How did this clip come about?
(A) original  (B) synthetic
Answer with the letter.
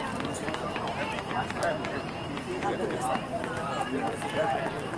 A